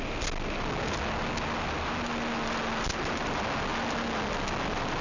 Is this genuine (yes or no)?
yes